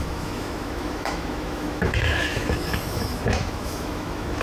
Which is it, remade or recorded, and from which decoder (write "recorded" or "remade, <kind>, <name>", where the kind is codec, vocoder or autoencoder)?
remade, autoencoder, DAC-VAE